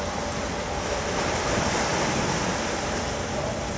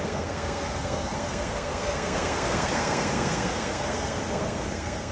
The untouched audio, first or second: first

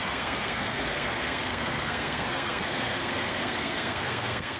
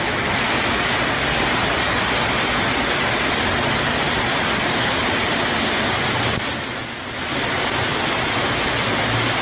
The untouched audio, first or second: second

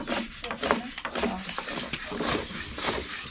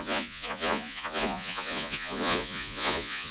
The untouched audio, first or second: first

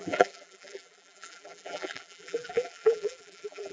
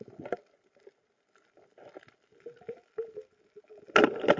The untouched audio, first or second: second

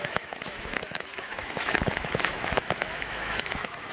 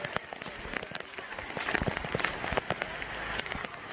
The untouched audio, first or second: second